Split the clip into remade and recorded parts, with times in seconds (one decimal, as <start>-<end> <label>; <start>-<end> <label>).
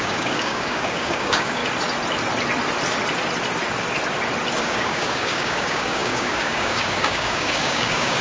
0.0-1.6 remade; 1.6-4.6 recorded; 4.6-8.2 remade